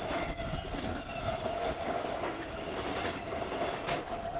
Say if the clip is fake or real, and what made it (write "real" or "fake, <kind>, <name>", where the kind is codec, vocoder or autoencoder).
real